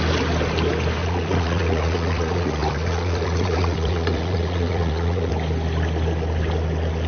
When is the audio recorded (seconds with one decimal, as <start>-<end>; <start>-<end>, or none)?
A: 0.0-1.0; 5.3-7.1